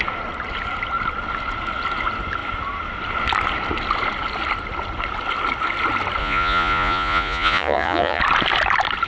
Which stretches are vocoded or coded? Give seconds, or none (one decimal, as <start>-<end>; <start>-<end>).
6.2-8.2